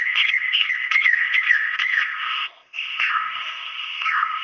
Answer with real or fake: fake